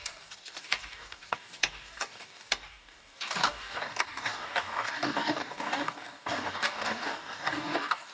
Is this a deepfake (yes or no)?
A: yes